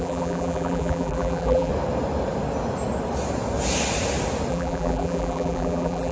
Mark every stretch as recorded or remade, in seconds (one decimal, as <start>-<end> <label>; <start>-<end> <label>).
0.0-1.7 remade; 1.7-4.5 recorded; 4.5-6.1 remade